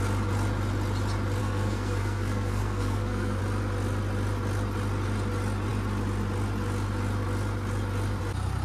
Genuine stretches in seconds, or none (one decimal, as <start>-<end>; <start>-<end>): 0.0-1.4; 3.4-8.6